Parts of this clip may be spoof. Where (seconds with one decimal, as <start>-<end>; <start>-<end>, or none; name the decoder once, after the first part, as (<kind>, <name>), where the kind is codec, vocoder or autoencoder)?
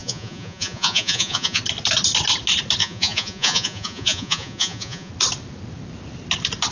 0.0-1.6 (vocoder, Vocos); 2.8-5.1